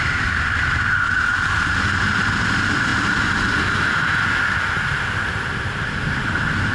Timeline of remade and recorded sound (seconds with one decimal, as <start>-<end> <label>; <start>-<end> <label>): 0.0-6.7 recorded